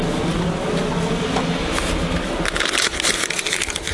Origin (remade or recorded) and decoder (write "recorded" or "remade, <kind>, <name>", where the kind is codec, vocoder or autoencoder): recorded